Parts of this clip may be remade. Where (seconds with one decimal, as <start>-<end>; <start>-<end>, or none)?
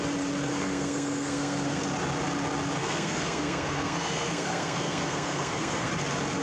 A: 0.5-1.8; 2.8-5.9